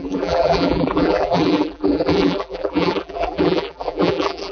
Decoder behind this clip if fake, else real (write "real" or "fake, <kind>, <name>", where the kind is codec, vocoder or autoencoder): fake, vocoder, BigVGAN v2